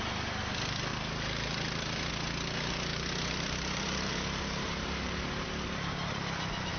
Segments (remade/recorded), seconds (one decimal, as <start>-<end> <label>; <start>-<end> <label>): 0.0-0.9 recorded; 0.9-2.1 remade; 2.1-2.9 recorded; 2.9-6.8 remade